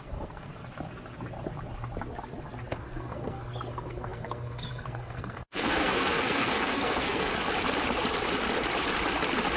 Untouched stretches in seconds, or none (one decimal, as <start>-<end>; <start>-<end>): 0.6-2.8; 7.3-9.6